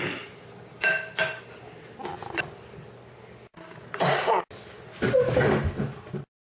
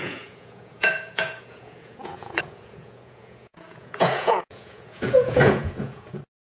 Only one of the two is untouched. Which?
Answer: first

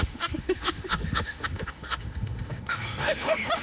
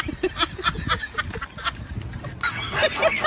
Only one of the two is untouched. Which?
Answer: second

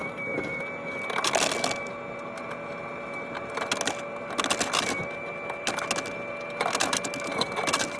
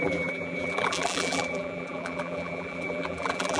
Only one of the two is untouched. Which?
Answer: first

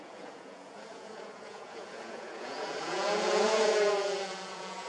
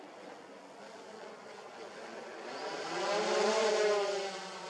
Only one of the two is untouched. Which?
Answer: second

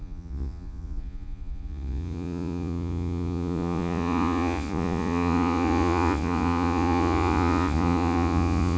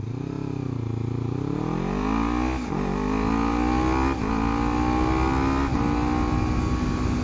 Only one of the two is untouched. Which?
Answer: second